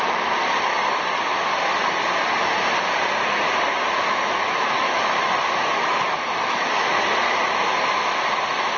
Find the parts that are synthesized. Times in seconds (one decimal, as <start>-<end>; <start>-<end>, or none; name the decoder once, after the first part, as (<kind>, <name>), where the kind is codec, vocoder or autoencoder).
4.1-7.0 (autoencoder, DAC-VAE)